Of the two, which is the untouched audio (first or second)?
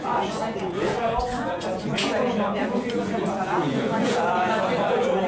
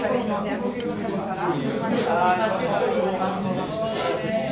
second